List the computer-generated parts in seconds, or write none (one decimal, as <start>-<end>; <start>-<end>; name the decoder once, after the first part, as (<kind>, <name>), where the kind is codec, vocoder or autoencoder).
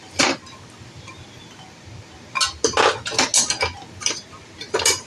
0.0-1.1 (vocoder, BigVGAN v2); 4.2-5.1